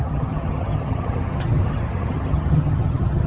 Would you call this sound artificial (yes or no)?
yes